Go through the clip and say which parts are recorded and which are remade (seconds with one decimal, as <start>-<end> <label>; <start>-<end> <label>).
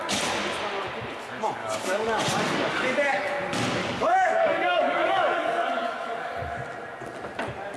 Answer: 0.0-1.6 recorded; 1.6-3.3 remade; 3.3-3.8 recorded; 3.8-6.3 remade; 6.3-7.8 recorded